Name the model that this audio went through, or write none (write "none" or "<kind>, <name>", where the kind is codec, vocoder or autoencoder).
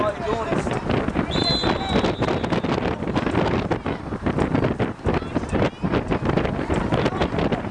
none